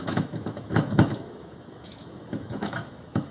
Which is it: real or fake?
fake